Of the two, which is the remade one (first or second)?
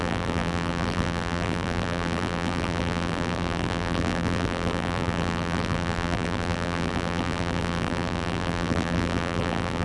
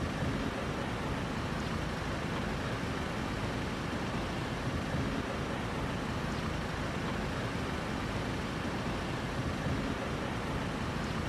first